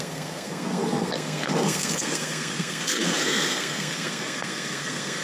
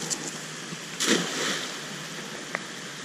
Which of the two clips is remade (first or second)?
first